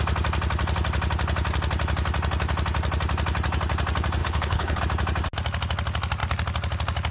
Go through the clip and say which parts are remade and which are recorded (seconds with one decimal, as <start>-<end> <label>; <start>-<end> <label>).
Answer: 0.0-4.2 recorded; 4.2-4.8 remade; 4.8-7.1 recorded